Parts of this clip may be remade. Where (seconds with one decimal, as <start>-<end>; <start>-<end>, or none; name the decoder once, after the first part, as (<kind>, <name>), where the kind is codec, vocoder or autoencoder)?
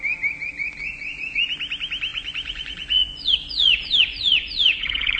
0.8-1.4 (vocoder, Vocos); 2.1-5.2